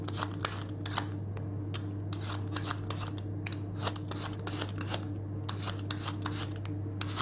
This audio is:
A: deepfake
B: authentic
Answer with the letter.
B